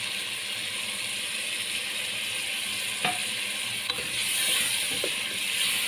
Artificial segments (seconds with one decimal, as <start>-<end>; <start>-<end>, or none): none